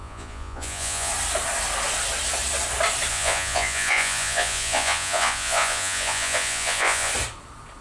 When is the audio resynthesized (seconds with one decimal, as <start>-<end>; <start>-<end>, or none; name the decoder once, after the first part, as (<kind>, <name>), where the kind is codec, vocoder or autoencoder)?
0.0-1.1 (vocoder, Vocos); 3.1-7.1